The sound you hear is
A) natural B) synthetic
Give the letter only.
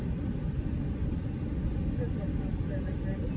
A